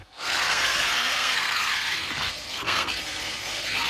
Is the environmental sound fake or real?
fake